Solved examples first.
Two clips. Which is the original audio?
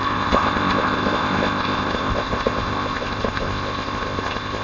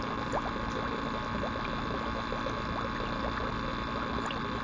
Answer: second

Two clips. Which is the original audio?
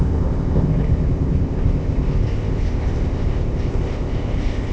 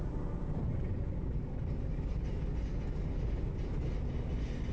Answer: second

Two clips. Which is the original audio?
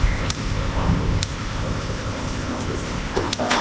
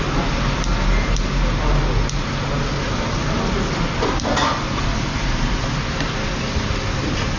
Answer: second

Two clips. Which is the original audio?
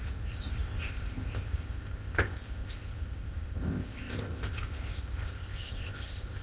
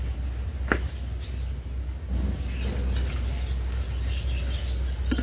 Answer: second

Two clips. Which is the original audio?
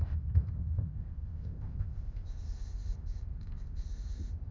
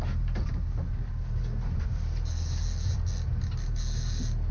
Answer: second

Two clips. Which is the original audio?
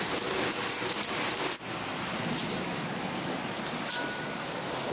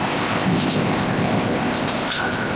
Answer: first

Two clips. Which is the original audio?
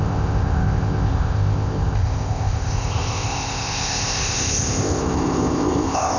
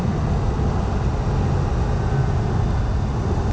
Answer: second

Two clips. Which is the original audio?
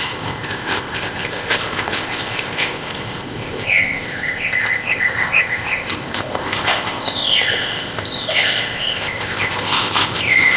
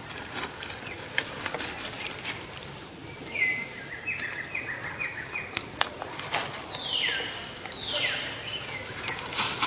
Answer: second